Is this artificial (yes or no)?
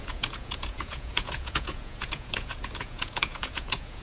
yes